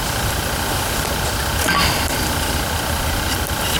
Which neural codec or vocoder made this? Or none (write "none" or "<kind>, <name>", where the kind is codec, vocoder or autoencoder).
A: none